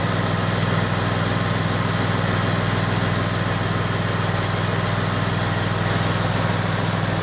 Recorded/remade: recorded